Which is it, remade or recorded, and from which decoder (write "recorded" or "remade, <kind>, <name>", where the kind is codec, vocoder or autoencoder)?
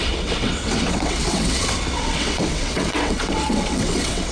remade, vocoder, WaveNeXt